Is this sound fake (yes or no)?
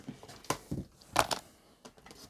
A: no